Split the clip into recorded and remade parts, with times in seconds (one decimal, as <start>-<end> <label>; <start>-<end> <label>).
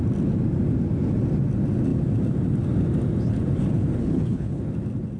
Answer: 0.0-4.0 recorded; 4.0-4.6 remade; 4.6-5.2 recorded